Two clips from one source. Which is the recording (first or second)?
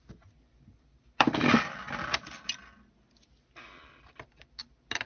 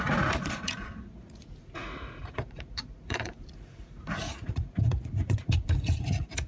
first